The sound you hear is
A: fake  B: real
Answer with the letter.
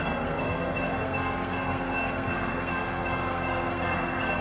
A